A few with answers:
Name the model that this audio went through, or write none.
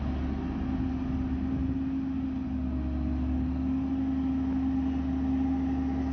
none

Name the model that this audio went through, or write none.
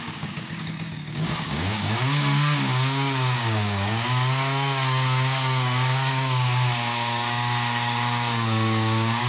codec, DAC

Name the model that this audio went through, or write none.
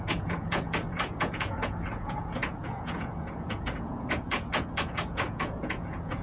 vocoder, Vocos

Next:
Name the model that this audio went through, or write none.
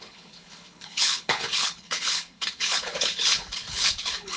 codec, HILCodec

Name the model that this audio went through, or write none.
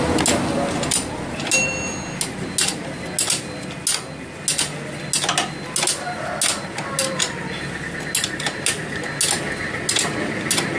none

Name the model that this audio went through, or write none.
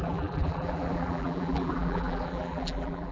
vocoder, BigVGAN v2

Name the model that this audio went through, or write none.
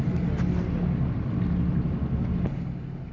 none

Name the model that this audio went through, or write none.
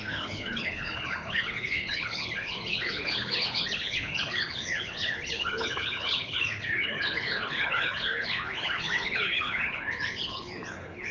codec, HILCodec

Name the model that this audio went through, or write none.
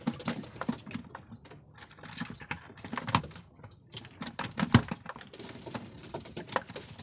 none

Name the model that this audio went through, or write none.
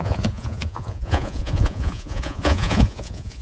vocoder, Vocos